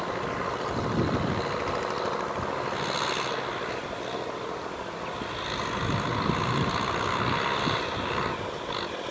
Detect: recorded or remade recorded